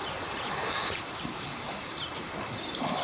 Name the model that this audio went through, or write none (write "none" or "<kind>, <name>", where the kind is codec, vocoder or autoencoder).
vocoder, BigVGAN v2